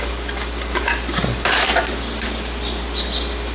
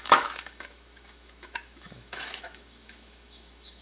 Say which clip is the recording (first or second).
first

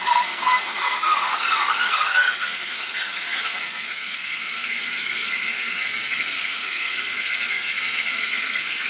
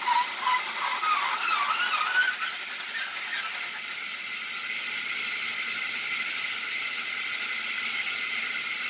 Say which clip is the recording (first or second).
second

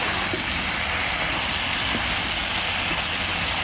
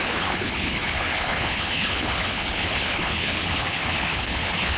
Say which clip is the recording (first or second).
first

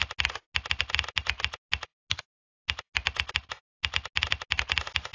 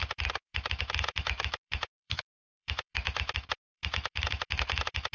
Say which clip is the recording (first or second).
first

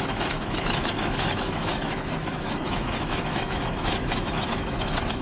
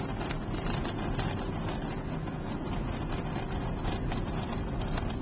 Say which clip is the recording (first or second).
second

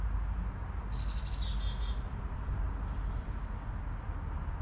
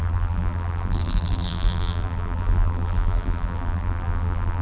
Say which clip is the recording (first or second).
first